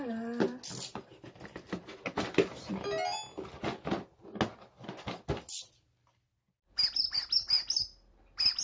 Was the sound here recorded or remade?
recorded